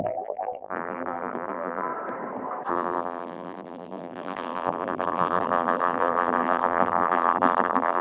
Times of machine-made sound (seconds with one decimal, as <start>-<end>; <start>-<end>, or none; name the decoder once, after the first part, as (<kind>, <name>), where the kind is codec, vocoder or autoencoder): 0.0-1.9 (vocoder, BigVGAN v2); 2.7-8.0